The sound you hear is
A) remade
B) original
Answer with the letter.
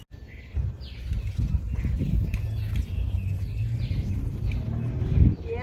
B